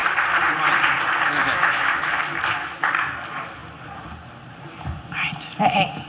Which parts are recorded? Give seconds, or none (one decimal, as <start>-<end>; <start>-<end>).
0.0-1.4; 2.1-6.1